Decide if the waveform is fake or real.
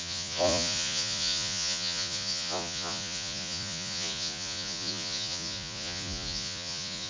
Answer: fake